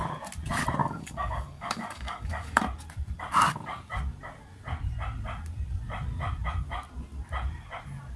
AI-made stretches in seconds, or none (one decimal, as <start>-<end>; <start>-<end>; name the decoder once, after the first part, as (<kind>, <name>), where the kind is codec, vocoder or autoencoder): 0.8-2.6 (codec, DAC)